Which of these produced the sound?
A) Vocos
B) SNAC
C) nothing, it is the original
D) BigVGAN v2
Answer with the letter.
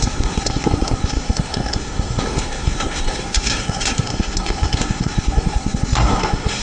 B